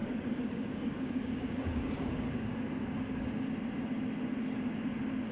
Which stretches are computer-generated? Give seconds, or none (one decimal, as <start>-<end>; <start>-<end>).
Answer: 0.0-3.2